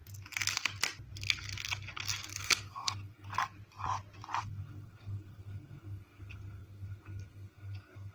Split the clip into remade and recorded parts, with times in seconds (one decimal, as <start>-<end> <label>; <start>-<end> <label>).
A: 0.0-2.4 recorded; 2.4-3.4 remade; 3.4-4.4 recorded; 4.4-8.1 remade